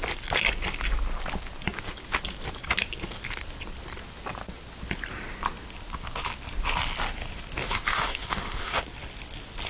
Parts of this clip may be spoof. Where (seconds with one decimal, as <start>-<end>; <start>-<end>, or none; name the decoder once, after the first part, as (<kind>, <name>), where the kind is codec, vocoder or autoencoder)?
7.6-8.8 (autoencoder, DAC-VAE)